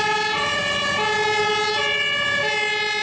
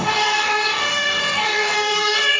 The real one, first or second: first